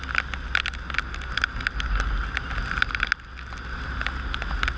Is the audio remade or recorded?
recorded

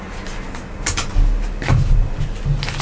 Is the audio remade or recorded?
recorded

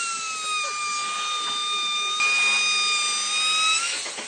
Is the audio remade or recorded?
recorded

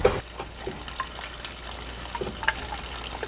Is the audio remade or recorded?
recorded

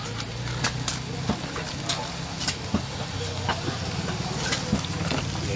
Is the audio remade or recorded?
recorded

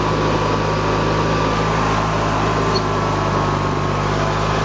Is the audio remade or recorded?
recorded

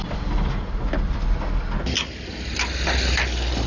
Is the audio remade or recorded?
recorded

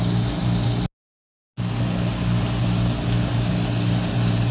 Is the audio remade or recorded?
recorded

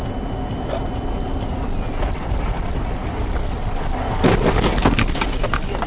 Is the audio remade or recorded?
recorded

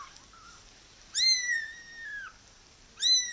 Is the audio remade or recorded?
recorded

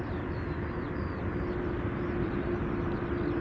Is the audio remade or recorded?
recorded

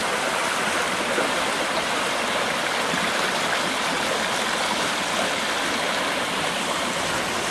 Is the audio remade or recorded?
recorded